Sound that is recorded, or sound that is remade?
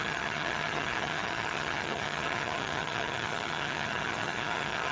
remade